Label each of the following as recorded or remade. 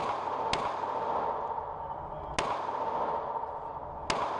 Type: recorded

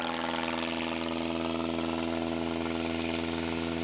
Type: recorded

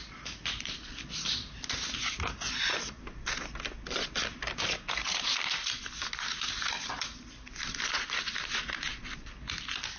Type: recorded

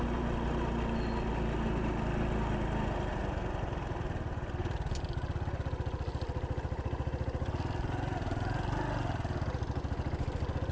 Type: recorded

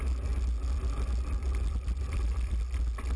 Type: recorded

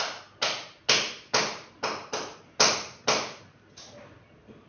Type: recorded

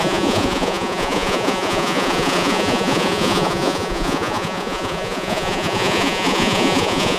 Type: remade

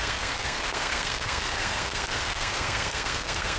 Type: remade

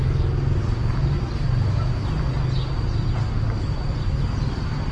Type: recorded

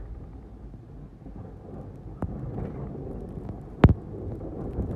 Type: recorded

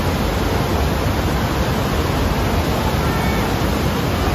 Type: recorded